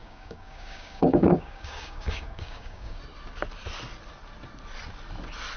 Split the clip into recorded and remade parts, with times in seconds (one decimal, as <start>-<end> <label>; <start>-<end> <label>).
0.0-3.0 remade; 3.0-5.6 recorded